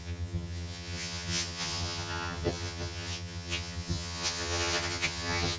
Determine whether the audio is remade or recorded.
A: remade